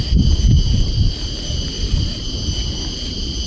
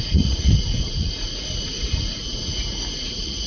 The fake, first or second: second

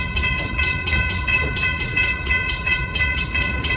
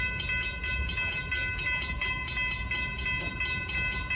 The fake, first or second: first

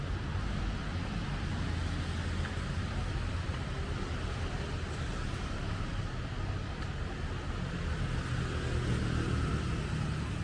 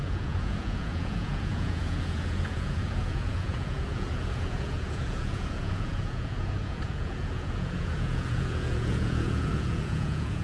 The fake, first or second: second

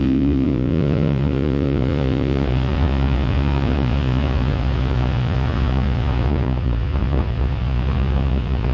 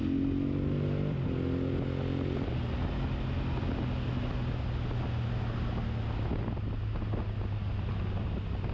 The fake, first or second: first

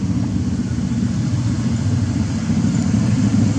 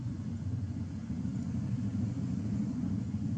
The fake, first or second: second